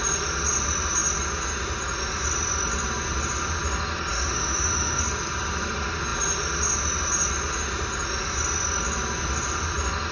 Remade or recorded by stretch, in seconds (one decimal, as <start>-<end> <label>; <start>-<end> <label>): 0.0-4.1 recorded; 4.1-5.0 remade; 5.0-10.1 recorded